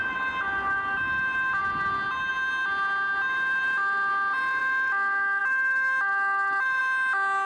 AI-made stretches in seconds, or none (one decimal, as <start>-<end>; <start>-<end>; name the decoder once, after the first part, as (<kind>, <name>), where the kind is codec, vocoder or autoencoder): none